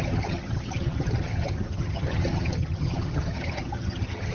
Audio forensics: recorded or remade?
remade